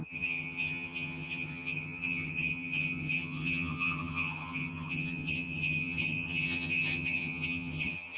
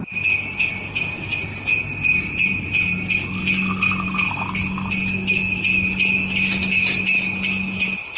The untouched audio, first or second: second